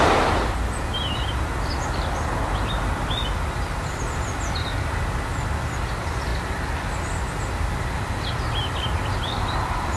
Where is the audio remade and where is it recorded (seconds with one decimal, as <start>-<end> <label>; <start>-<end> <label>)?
0.0-10.0 recorded